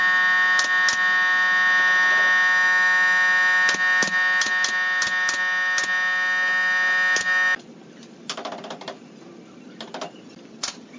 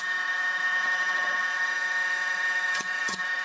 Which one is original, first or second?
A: first